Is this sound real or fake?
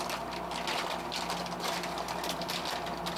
real